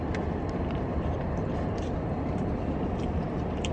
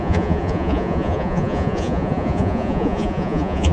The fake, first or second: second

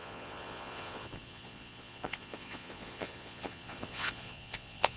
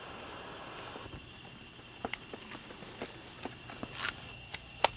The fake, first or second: first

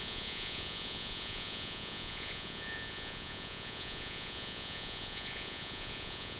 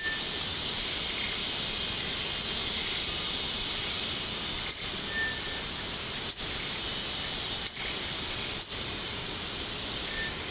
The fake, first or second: first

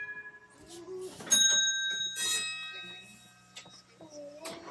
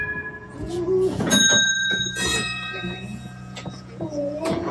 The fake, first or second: second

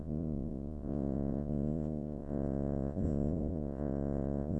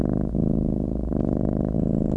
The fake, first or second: first